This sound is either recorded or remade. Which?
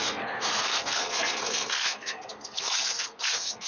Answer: remade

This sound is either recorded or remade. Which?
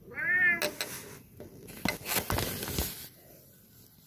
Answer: recorded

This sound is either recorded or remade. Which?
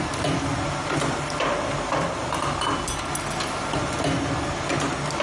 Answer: recorded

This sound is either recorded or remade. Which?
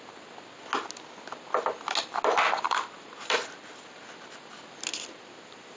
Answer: recorded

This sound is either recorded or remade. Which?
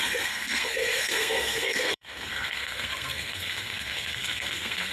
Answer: remade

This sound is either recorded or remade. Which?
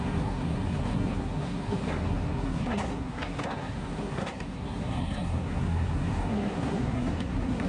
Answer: remade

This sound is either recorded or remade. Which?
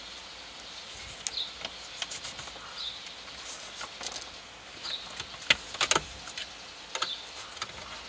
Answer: recorded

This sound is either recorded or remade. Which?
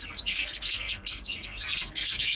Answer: remade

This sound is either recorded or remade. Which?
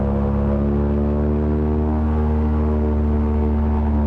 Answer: recorded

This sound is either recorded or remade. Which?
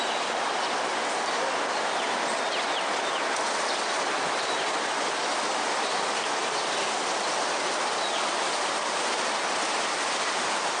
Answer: recorded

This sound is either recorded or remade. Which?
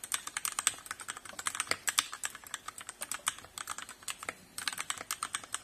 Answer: recorded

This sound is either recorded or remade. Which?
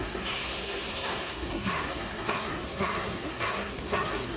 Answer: remade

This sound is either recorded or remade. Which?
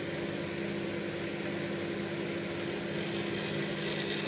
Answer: recorded